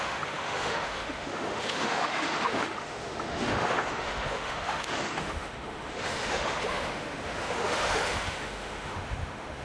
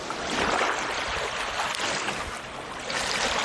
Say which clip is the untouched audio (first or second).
second